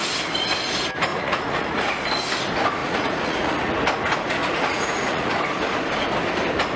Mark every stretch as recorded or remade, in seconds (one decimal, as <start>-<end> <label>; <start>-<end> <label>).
0.0-1.1 recorded; 1.1-1.9 remade; 1.9-2.8 recorded; 2.8-3.7 remade; 3.7-4.4 recorded; 4.4-5.4 remade; 5.4-6.8 recorded